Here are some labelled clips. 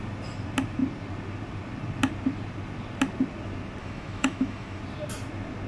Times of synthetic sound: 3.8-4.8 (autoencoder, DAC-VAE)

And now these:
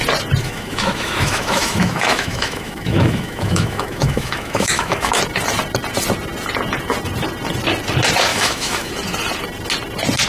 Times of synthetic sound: 0.4-5.2 (autoencoder, DAC-VAE); 8.3-8.9

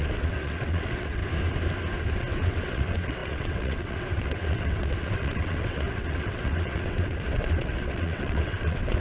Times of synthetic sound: 0.0-1.2 (vocoder, WaveNeXt); 2.2-9.0

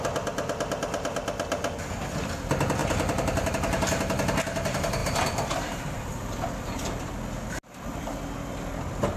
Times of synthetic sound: 2.8-3.5 (vocoder, BigVGAN v2); 5.0-7.1

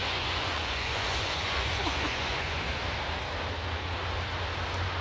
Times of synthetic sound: 0.0-2.6 (vocoder, Vocos)

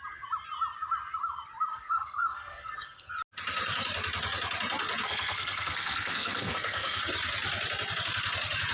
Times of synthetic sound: 1.7-3.1 (codec, SNAC); 5.1-7.0

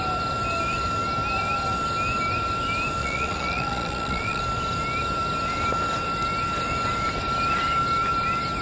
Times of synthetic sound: 3.0-4.4 (vocoder, Vocos)